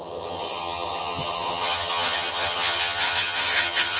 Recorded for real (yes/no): no